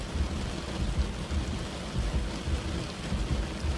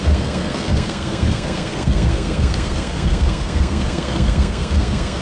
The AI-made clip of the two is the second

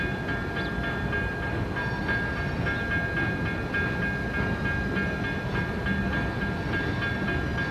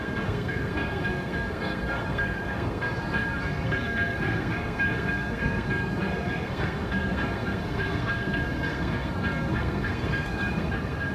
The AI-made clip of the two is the second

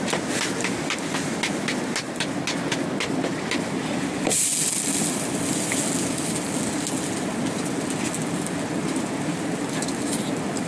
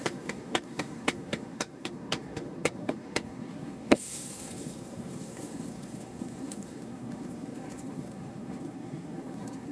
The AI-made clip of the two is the second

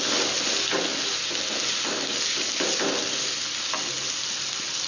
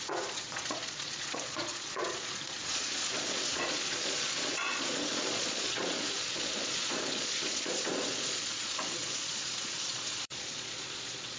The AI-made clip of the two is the second